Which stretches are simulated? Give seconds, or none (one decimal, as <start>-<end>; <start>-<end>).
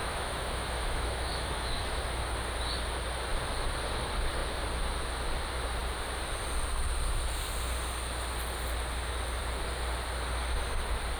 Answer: 0.0-2.0